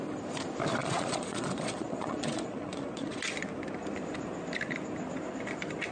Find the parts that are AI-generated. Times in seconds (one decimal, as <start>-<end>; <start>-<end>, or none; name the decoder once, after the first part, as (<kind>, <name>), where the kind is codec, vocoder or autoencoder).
0.8-3.2 (vocoder, Vocos)